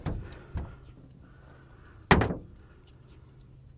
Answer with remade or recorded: recorded